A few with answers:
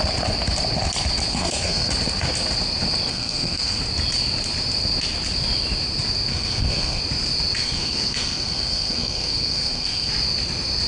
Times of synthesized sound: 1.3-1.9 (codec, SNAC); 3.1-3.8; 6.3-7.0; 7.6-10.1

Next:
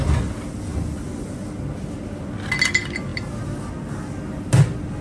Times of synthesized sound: none

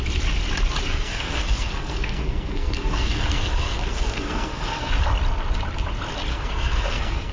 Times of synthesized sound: 0.9-4.9 (codec, SNAC); 6.3-7.3

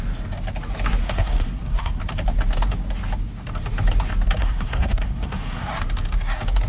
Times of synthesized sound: 1.0-2.0 (codec, SNAC); 4.4-5.7

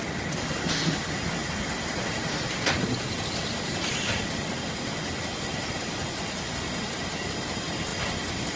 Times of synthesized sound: none

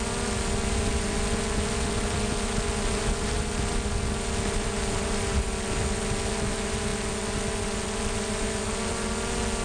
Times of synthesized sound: none

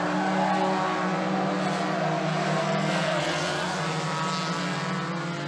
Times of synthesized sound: 2.6-3.2 (codec, SNAC)